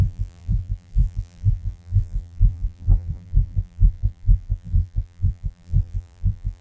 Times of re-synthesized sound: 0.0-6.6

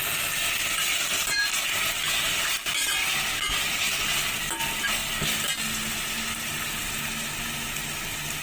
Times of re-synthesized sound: none

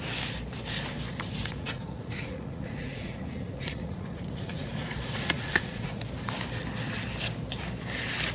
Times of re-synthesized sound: 1.4-6.0

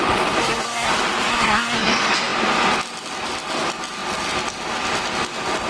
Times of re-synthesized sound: 0.4-0.9; 1.3-1.9

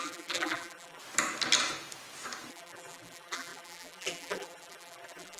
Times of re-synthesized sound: 0.0-1.0; 2.5-5.4